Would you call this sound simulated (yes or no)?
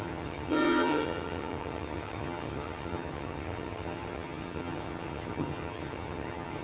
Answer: yes